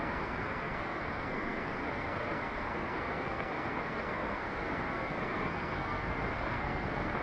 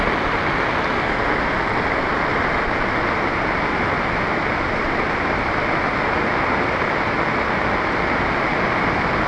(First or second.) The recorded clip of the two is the second